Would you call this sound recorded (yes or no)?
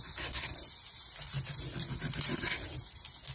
yes